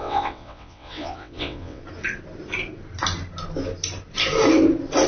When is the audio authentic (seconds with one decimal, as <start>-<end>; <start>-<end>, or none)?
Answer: 1.8-5.1